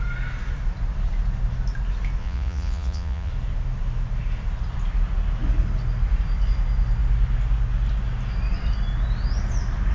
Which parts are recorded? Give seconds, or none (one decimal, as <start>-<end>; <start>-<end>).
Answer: 0.0-2.2; 3.3-9.9

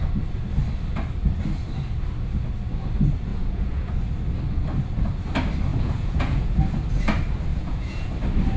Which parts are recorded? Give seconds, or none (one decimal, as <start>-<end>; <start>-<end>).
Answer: 0.0-3.3; 3.9-5.7; 6.6-7.5; 8.1-8.6

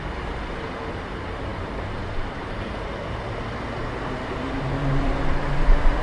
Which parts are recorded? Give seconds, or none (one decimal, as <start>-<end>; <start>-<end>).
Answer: none

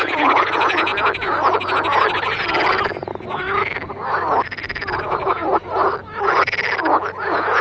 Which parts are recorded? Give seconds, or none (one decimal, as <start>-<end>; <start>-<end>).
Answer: 0.9-4.9; 5.8-7.0

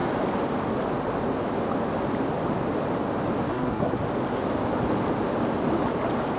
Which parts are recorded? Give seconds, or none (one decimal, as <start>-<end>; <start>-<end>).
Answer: 0.0-3.5; 4.0-6.4

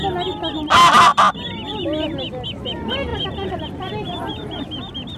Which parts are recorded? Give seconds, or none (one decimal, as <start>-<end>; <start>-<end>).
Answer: 0.0-5.2